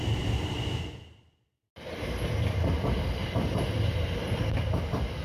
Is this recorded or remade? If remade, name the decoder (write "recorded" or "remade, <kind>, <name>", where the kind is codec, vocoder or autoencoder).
recorded